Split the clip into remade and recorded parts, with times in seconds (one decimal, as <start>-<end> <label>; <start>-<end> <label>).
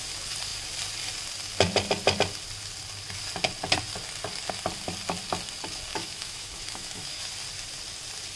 0.0-6.0 recorded; 6.0-7.3 remade; 7.3-8.4 recorded